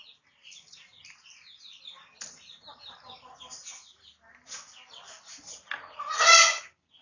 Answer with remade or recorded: recorded